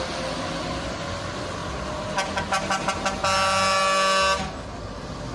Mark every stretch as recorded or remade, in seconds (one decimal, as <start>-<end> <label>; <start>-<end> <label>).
0.0-5.3 recorded